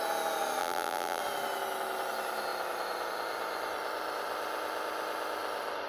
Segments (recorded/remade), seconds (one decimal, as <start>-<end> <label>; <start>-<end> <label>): 0.0-0.6 recorded; 0.6-1.2 remade; 1.2-5.9 recorded